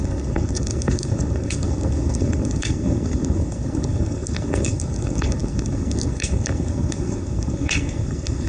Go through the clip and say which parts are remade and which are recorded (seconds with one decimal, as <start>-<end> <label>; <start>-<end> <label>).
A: 0.0-8.5 remade